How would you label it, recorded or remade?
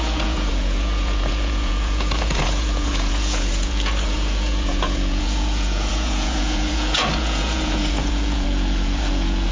remade